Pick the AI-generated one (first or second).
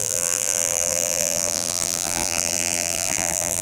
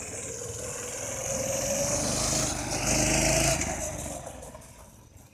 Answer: first